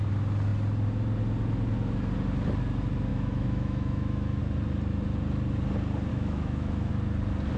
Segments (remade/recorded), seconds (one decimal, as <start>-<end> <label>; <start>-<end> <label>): 0.0-3.1 recorded; 3.1-4.4 remade; 4.4-6.1 recorded; 6.1-6.9 remade; 6.9-7.6 recorded

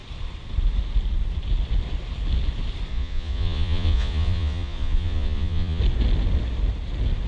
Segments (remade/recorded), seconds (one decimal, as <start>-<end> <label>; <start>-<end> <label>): 0.0-2.9 recorded; 2.9-5.8 remade; 5.8-7.3 recorded

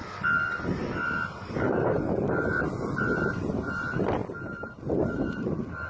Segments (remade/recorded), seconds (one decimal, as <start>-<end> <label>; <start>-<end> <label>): 0.0-5.9 recorded

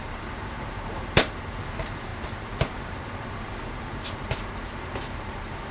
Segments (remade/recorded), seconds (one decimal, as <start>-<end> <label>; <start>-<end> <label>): 0.0-5.7 remade

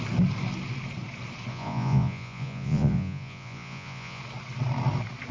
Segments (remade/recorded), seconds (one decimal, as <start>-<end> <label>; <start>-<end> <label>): 0.0-1.5 recorded; 1.5-4.2 remade; 4.2-5.3 recorded